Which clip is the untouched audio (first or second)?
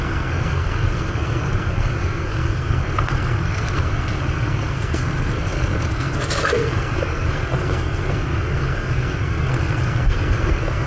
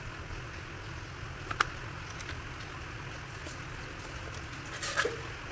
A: second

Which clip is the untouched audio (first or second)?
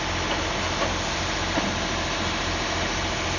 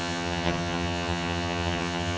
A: first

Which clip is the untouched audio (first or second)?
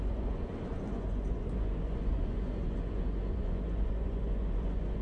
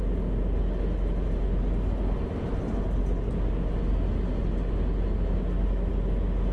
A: second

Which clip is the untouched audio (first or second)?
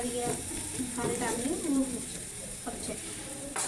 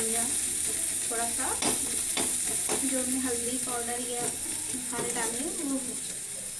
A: second